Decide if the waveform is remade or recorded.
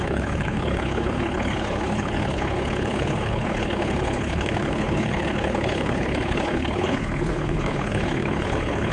remade